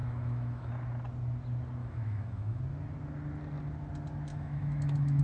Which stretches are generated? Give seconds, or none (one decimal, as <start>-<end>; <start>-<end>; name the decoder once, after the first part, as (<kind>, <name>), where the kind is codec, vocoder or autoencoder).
0.0-0.7 (autoencoder, DAC-VAE); 1.8-2.6; 4.3-5.2